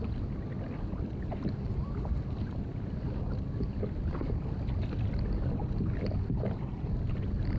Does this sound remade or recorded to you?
recorded